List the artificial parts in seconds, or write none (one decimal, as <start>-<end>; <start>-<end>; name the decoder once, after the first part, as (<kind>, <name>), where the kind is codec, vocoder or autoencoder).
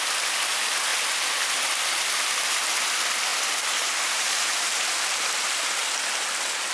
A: 3.3-5.7 (vocoder, BigVGAN v2)